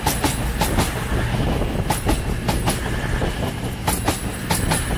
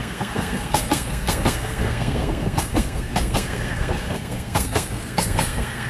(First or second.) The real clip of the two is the first